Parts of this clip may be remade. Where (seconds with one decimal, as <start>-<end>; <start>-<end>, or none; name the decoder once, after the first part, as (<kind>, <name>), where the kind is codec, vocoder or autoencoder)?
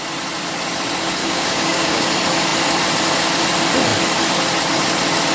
1.2-2.1 (codec, DAC)